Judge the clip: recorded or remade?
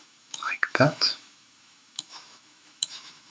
remade